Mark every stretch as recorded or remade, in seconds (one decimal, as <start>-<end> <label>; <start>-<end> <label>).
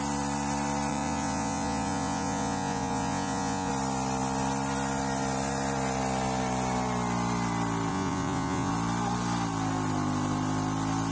0.0-0.9 recorded; 0.9-3.7 remade; 3.7-7.9 recorded; 7.9-8.7 remade; 8.7-11.1 recorded